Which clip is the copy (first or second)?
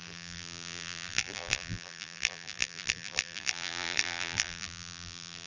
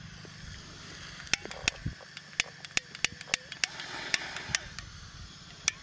first